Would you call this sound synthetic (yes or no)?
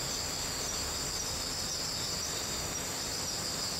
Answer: no